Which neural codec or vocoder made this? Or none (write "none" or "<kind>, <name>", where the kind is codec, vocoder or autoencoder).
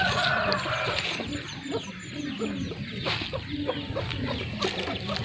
none